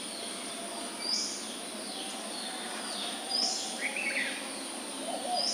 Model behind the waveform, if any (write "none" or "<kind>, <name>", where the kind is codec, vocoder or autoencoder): none